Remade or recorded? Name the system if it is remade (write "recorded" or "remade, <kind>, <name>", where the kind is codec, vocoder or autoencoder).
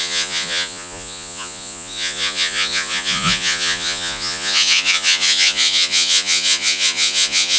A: remade, vocoder, Vocos